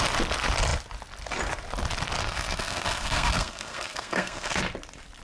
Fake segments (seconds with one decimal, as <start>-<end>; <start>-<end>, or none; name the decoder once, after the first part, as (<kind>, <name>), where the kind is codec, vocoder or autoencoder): 2.2-4.6 (codec, SNAC)